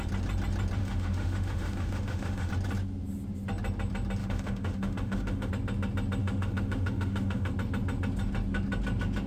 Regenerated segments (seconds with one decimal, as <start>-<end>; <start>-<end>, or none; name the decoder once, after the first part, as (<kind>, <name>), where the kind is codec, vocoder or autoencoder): 0.8-2.5 (autoencoder, DAC-VAE); 4.2-5.5; 6.2-7.5